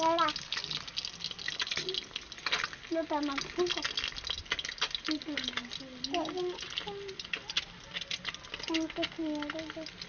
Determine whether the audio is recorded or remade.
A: recorded